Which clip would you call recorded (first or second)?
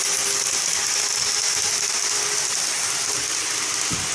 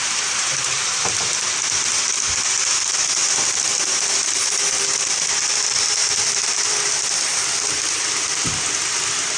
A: first